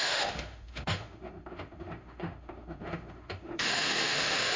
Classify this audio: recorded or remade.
remade